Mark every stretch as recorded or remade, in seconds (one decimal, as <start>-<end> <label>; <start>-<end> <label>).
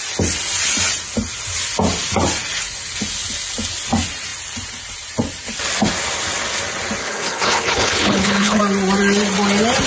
0.0-7.0 recorded; 7.0-8.6 remade; 8.6-9.9 recorded